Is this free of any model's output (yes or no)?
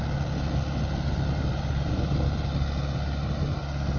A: yes